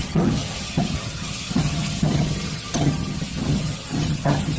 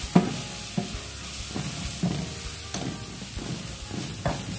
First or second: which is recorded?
second